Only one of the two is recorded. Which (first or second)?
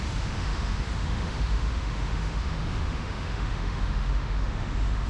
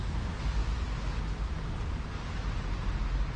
second